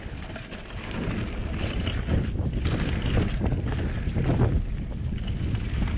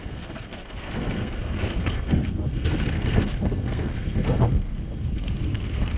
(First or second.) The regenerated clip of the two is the second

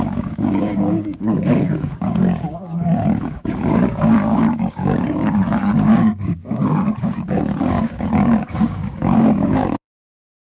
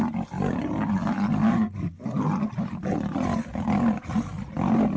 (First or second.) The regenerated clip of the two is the first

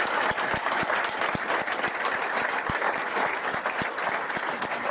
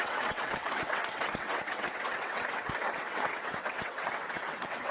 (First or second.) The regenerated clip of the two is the second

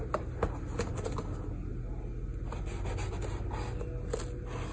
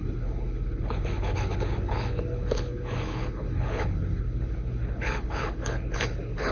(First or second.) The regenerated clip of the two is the second